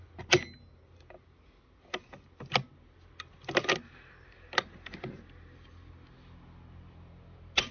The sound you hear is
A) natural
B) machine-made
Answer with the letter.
A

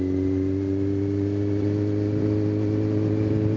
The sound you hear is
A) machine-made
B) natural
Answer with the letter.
B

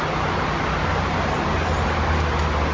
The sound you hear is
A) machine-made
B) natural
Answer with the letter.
B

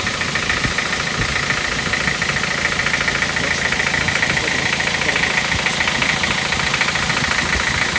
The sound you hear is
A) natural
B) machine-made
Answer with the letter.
A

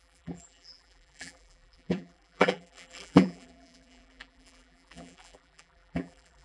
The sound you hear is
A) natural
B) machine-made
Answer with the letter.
B